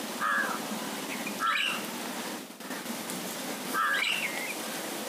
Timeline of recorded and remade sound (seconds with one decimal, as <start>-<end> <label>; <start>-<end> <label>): 0.0-5.1 recorded

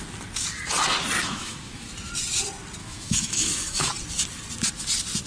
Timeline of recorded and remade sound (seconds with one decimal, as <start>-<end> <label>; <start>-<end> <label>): 0.0-1.2 recorded; 1.2-1.9 remade; 1.9-2.8 recorded; 2.8-3.9 remade; 3.9-5.3 recorded

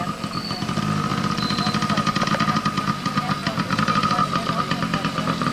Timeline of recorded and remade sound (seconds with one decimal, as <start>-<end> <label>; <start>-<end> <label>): 0.0-5.5 recorded

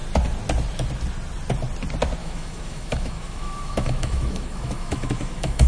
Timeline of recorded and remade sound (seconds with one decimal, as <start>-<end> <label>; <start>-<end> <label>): 0.0-2.2 recorded; 2.2-5.7 remade